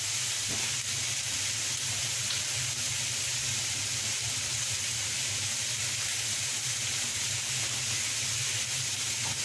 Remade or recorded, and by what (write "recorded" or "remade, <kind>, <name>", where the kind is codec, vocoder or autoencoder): recorded